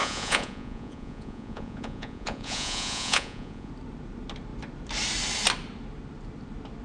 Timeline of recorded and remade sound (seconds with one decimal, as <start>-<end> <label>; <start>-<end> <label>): 0.0-3.7 remade; 3.7-6.8 recorded